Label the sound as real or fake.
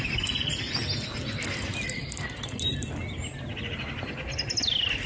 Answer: real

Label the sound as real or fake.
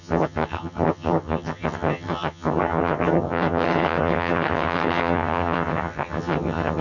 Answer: fake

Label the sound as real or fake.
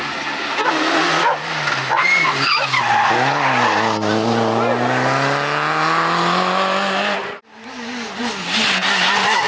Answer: real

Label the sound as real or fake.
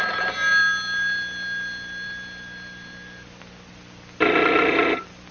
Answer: real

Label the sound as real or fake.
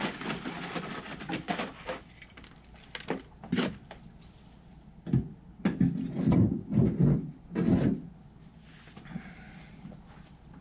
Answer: real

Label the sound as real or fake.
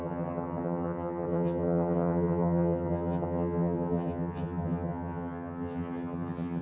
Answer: fake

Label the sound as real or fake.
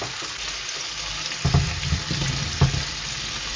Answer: real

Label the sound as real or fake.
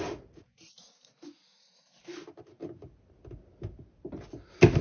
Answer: real